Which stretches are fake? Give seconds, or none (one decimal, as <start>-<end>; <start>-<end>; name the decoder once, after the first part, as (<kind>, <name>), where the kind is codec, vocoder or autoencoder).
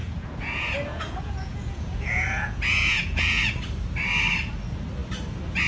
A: 0.0-3.4 (vocoder, Vocos)